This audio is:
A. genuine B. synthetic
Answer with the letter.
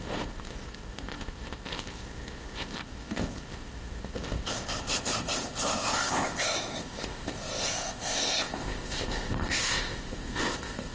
B